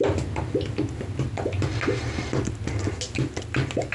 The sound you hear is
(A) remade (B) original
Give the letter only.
B